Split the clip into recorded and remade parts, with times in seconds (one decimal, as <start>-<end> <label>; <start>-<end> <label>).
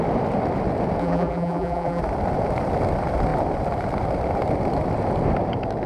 0.0-1.0 recorded; 1.0-2.0 remade; 2.0-5.9 recorded